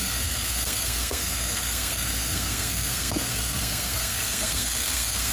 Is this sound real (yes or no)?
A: no